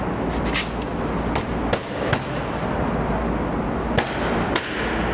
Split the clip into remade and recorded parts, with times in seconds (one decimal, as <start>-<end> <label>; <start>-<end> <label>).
0.0-5.1 recorded